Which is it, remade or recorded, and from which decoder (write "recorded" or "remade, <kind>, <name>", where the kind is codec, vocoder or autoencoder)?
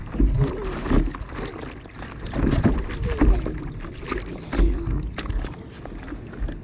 recorded